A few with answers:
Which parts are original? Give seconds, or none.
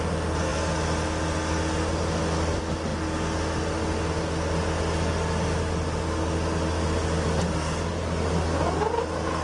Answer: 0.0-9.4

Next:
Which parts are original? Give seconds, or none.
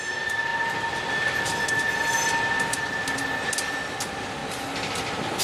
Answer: 0.0-5.4